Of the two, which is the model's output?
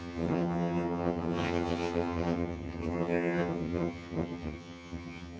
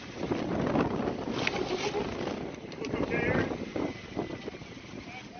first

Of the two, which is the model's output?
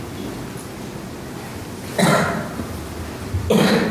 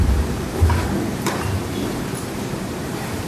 second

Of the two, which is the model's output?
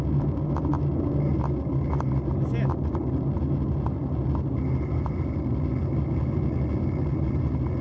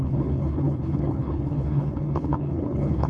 second